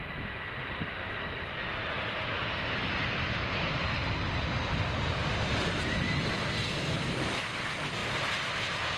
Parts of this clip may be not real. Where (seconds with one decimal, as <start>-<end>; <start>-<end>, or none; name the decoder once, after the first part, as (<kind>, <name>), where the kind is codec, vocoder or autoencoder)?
none